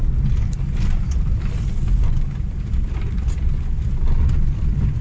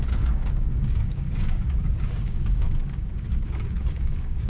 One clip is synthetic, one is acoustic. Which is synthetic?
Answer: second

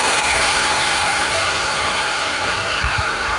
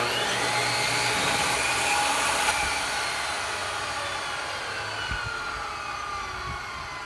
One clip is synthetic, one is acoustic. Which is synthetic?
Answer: first